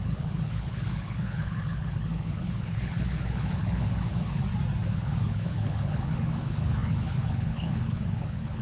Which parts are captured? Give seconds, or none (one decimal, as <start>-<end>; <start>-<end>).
4.4-4.9